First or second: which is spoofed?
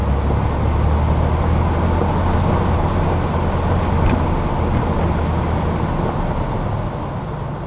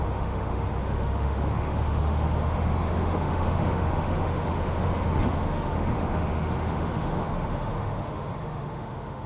second